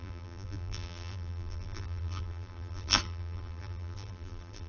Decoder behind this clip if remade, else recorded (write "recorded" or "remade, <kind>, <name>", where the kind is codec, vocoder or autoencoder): remade, vocoder, BigVGAN v2